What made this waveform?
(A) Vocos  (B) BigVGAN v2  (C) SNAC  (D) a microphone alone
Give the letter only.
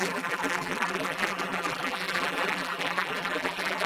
B